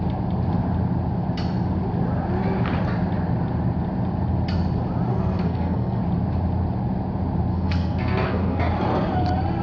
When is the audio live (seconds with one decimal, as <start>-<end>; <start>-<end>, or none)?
0.0-5.1; 6.0-7.5; 8.7-9.6